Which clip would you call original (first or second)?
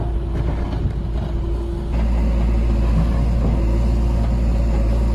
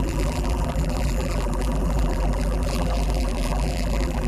first